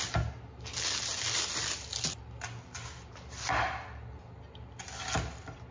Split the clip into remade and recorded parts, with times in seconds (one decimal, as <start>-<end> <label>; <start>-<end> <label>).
0.0-5.7 recorded